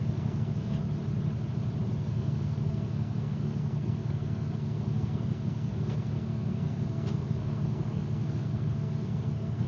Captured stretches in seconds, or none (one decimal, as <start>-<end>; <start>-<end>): 0.8-2.0